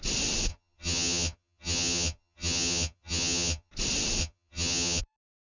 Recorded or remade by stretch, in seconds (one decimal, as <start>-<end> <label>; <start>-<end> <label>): 0.0-0.5 recorded; 0.5-3.7 remade; 3.7-4.2 recorded; 4.2-5.0 remade; 5.0-5.4 recorded